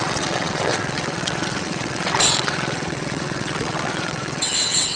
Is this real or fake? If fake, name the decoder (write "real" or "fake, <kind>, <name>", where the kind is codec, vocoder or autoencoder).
fake, vocoder, WaveNeXt